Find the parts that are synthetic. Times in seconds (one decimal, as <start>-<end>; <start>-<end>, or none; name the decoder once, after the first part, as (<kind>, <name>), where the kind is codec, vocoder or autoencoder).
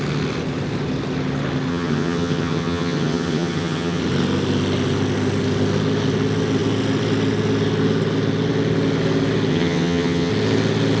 1.7-4.0 (vocoder, HiFi-GAN); 9.5-10.3